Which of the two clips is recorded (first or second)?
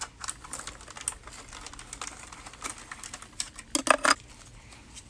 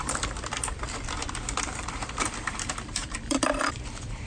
first